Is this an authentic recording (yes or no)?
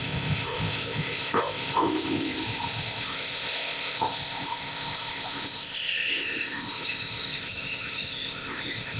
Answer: no